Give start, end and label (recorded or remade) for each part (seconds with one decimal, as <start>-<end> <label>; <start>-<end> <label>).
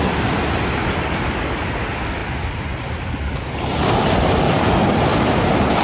0.0-5.1 recorded; 5.1-5.8 remade